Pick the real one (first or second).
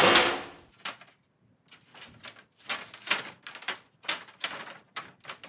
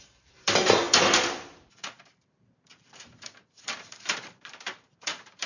first